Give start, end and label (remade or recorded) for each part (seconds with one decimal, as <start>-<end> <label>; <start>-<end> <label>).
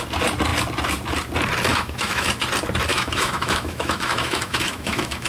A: 0.0-1.7 recorded; 1.7-2.3 remade; 2.3-2.9 recorded; 2.9-5.3 remade